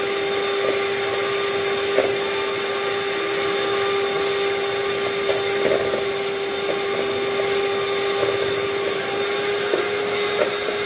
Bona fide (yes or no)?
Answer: yes